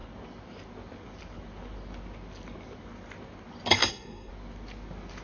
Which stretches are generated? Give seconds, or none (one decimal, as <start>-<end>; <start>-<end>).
3.8-4.3